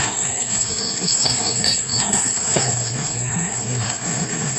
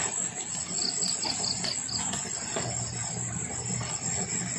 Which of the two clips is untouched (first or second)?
second